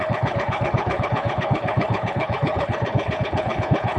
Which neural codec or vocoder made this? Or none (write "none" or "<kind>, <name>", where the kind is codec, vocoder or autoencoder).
codec, HILCodec